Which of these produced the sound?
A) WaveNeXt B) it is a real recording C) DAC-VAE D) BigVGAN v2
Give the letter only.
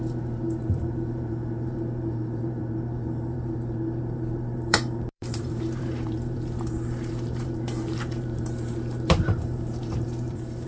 D